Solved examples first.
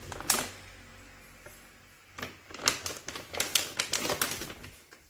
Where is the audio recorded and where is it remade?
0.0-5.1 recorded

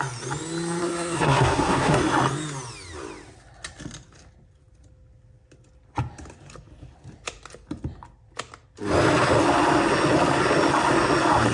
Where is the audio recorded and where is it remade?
0.0-0.8 recorded; 0.8-2.0 remade; 2.0-11.5 recorded

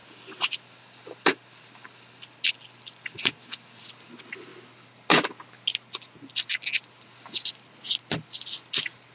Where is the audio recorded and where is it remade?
0.0-9.1 recorded